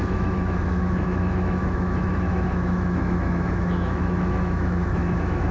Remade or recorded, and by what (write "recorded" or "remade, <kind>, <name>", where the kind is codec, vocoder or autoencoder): remade, autoencoder, DAC-VAE